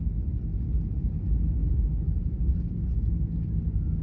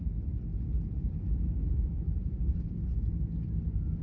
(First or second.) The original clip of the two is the first